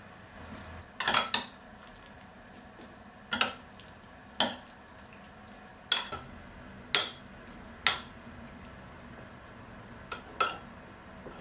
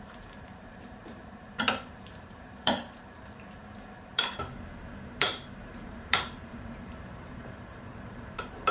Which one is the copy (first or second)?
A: second